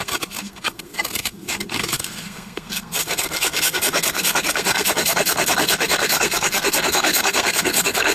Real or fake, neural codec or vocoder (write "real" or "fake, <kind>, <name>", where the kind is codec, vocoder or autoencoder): fake, codec, SNAC